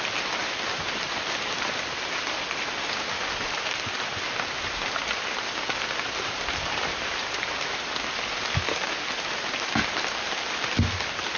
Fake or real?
real